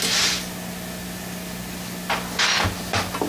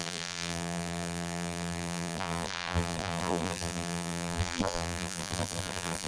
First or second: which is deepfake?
second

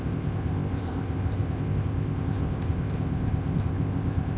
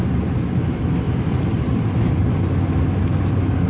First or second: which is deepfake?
first